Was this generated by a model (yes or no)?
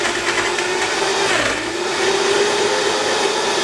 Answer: no